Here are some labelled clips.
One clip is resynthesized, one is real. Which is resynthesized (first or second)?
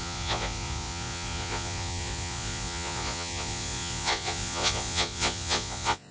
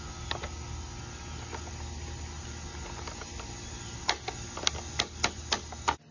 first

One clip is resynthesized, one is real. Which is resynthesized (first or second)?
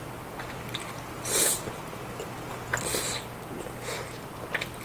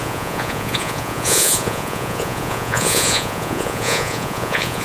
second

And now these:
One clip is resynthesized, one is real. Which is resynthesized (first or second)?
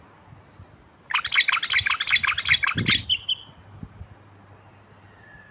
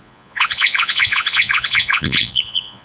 second